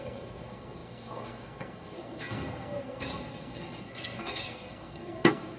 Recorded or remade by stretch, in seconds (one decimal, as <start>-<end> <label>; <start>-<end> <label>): 0.0-5.6 remade